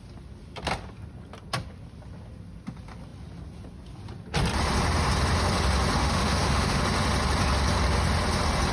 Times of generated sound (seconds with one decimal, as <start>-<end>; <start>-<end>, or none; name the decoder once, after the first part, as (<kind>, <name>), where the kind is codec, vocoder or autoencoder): 6.0-6.8 (autoencoder, DAC-VAE)